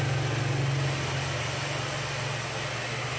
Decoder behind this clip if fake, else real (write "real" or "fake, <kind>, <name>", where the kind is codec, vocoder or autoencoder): real